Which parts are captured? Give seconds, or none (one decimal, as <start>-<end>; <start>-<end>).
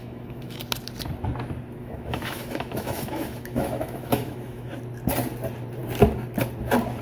0.6-1.8; 4.7-7.0